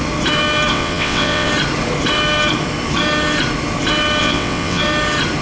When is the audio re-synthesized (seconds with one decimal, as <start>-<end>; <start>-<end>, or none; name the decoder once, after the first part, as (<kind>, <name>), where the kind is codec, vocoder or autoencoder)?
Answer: 0.7-1.5 (vocoder, WaveNeXt); 4.2-4.8